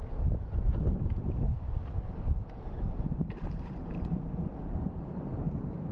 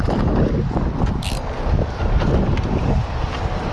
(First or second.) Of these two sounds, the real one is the second